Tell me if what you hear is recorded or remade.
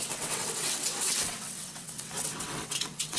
remade